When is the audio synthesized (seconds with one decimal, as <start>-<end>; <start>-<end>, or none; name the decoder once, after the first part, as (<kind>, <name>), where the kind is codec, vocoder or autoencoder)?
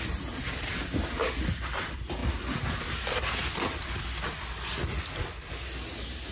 none